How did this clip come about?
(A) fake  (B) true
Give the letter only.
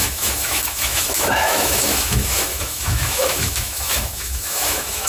A